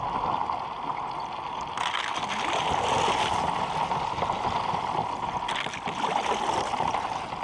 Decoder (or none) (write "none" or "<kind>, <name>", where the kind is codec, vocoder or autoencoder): none